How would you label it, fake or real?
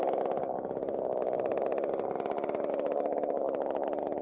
real